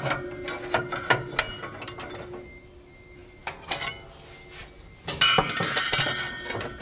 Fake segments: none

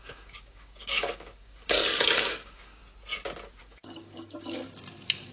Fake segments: 0.0-2.8; 3.6-4.6